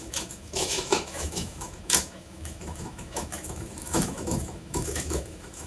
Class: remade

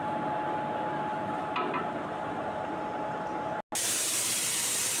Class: recorded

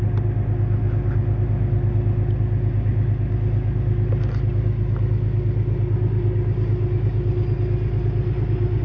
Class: recorded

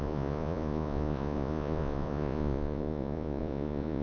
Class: remade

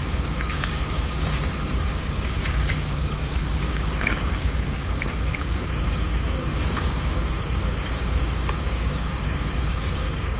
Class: remade